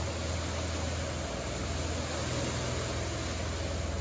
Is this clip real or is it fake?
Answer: real